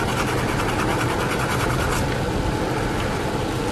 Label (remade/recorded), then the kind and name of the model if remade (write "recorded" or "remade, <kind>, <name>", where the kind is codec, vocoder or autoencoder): recorded